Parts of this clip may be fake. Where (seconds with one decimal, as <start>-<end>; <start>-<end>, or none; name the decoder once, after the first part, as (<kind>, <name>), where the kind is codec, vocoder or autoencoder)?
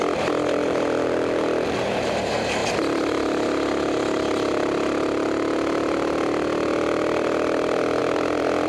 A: 2.6-3.1 (vocoder, BigVGAN v2); 8.0-8.7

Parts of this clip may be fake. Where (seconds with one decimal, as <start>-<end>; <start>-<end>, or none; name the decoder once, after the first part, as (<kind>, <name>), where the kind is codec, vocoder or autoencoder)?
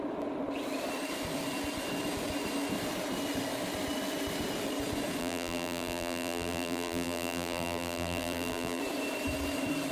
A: 5.2-8.8 (vocoder, BigVGAN v2)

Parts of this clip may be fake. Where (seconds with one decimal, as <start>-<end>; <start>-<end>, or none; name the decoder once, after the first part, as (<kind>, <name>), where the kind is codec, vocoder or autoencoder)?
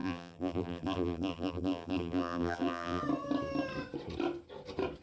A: 0.0-3.0 (vocoder, BigVGAN v2)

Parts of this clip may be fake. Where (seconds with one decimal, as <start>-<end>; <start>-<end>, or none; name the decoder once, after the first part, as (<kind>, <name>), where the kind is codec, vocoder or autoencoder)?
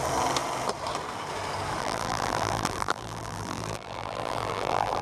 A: 1.8-5.0 (vocoder, BigVGAN v2)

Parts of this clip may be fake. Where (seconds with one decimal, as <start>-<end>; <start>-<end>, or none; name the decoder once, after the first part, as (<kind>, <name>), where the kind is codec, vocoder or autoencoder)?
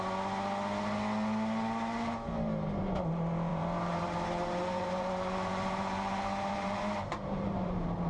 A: 3.5-8.1 (vocoder, BigVGAN v2)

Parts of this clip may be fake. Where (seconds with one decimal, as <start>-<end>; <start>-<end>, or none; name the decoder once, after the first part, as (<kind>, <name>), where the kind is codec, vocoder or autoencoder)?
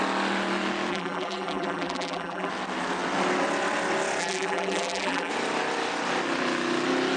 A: 0.9-2.5 (vocoder, BigVGAN v2); 4.2-5.3